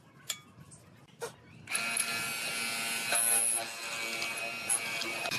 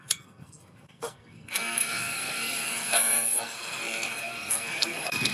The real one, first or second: first